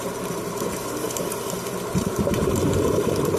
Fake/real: fake